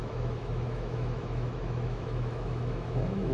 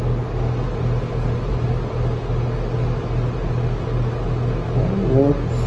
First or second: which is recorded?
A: second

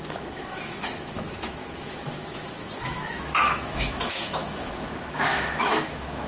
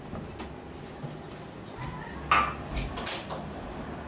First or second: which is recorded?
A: second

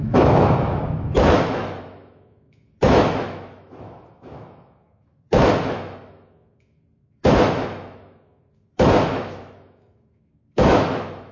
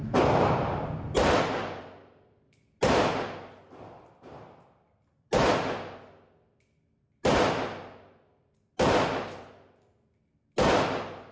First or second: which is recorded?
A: second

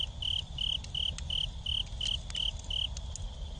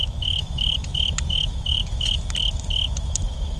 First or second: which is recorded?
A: first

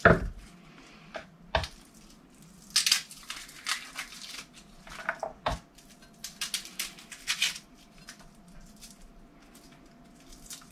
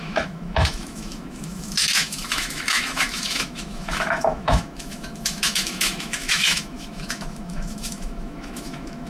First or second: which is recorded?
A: first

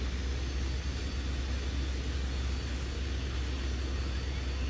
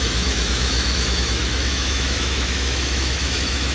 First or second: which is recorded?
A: first